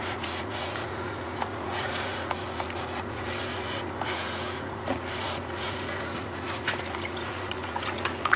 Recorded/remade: remade